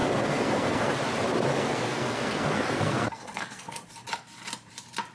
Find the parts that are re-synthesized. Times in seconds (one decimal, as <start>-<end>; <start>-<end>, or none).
0.0-0.9; 1.5-3.9